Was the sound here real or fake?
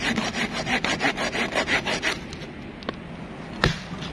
real